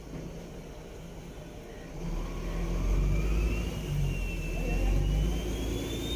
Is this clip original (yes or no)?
yes